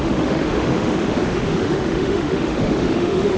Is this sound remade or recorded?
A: remade